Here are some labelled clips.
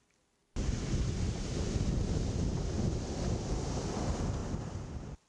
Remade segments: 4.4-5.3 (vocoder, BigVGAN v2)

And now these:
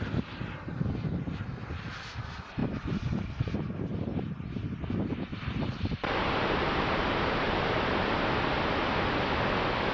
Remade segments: 5.3-7.6 (vocoder, BigVGAN v2)

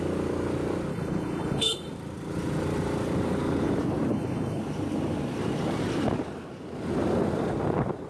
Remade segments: 0.9-1.9 (codec, HILCodec); 4.1-4.6

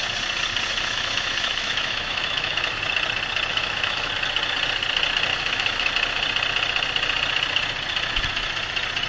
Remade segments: 0.7-2.8 (autoencoder, DAC-VAE); 3.5-4.1; 5.3-5.9

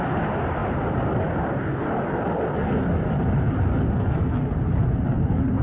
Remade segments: none